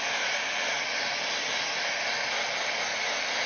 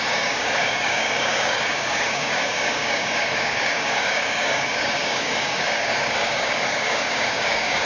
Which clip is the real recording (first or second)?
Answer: first